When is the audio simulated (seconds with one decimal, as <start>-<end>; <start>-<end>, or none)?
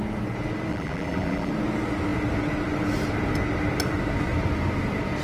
0.7-1.5